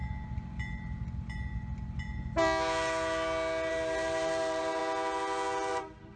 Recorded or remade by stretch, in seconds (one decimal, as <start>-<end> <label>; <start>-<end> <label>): 0.0-3.7 recorded; 3.7-4.8 remade; 4.8-5.7 recorded; 5.7-6.2 remade